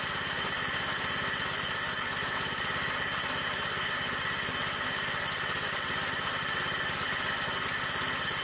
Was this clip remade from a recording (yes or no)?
no